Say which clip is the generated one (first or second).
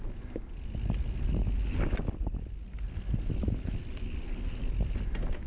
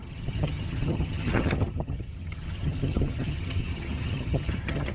second